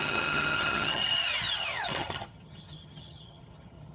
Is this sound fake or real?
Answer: fake